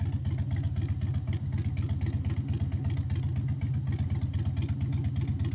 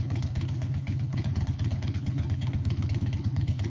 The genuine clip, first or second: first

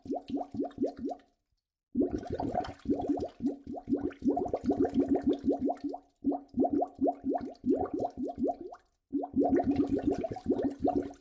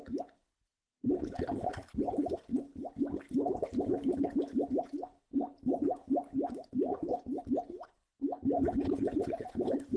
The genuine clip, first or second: first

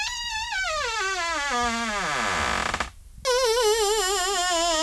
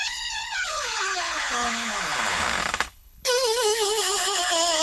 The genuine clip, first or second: first